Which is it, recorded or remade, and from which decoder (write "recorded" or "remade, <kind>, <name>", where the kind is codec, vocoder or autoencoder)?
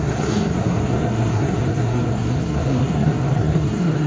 remade, codec, SNAC